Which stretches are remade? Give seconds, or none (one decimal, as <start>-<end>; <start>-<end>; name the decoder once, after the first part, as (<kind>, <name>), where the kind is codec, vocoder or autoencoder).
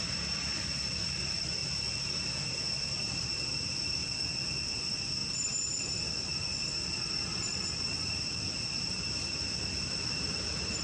0.0-1.6 (vocoder, BigVGAN v2); 2.4-4.0; 4.8-10.8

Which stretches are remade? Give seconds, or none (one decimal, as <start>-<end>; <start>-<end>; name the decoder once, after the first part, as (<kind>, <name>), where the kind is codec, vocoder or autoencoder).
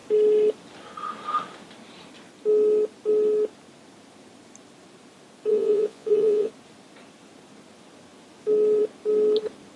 5.5-6.5 (vocoder, Vocos)